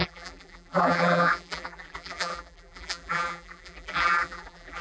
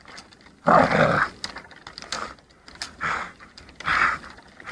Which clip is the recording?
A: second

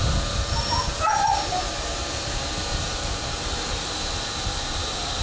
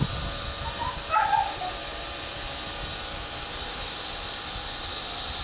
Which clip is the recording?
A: second